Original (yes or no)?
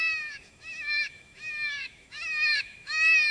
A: no